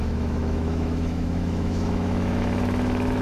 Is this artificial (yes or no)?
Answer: yes